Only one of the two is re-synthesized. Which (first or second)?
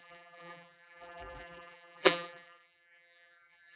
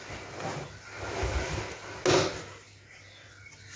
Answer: first